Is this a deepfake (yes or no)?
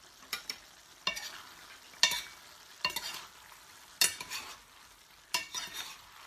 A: no